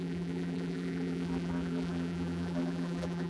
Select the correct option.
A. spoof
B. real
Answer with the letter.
A